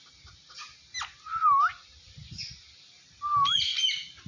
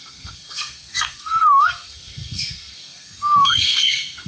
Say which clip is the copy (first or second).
second